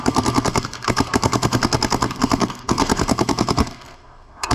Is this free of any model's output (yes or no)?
no